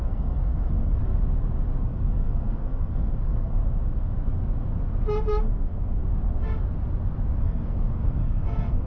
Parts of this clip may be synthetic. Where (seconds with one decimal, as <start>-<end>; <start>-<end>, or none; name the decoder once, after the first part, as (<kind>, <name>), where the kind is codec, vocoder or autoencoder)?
0.0-1.0 (codec, SNAC); 1.8-3.6; 5.3-6.0; 7.4-8.9